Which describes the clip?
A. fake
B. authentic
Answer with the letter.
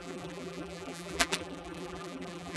A